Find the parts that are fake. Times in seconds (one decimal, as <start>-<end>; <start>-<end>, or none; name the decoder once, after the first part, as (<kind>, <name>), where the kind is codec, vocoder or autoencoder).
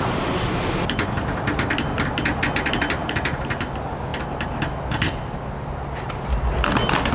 3.0-3.5 (vocoder, BigVGAN v2)